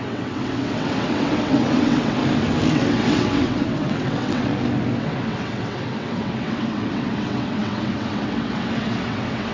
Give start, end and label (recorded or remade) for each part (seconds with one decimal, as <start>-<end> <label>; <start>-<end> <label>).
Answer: 0.0-2.2 remade; 2.2-2.7 recorded; 2.7-4.5 remade; 4.5-5.0 recorded; 5.0-9.5 remade